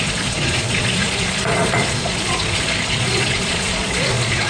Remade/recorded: remade